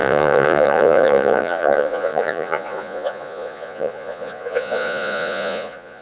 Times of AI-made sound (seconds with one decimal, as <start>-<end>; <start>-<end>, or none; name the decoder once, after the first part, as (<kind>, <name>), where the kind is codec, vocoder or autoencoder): 0.0-6.0 (vocoder, Vocos)